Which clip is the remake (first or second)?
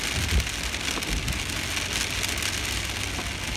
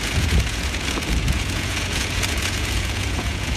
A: second